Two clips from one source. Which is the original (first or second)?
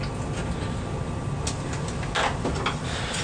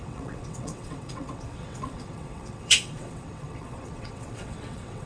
first